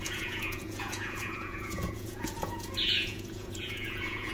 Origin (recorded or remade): remade